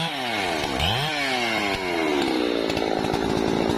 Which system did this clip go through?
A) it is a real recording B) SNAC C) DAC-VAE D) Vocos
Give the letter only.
A